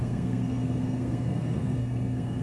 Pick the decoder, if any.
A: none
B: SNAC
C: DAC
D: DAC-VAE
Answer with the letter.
B